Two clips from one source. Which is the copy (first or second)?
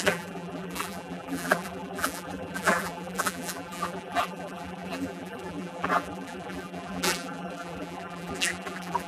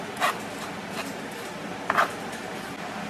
first